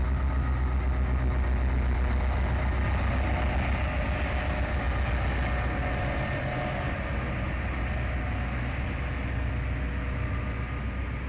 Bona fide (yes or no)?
yes